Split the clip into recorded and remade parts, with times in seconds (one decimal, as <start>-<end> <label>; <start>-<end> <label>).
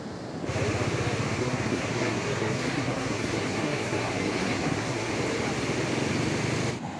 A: 0.0-1.4 recorded; 1.4-5.1 remade; 5.1-7.0 recorded